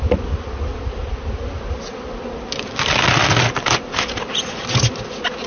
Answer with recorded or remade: recorded